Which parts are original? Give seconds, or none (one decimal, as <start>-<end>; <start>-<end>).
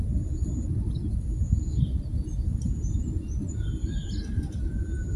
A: 0.0-5.2